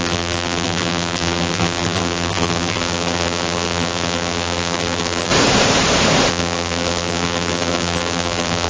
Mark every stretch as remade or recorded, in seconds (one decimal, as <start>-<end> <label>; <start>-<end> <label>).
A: 0.0-5.3 remade; 5.3-6.3 recorded; 6.3-8.7 remade